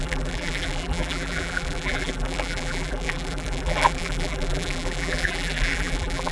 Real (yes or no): no